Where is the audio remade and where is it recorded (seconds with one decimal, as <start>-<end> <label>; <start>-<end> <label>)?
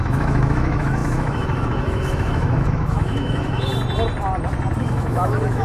0.0-3.7 remade; 3.7-4.8 recorded; 4.8-5.6 remade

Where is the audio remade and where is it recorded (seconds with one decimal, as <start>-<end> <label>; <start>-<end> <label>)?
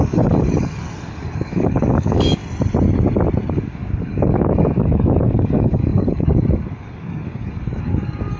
0.0-2.4 remade; 2.4-3.5 recorded; 3.5-8.4 remade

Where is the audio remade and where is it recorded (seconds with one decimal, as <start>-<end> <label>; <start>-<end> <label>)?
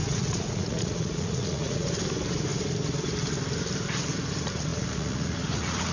0.0-1.9 remade; 1.9-4.7 recorded; 4.7-5.9 remade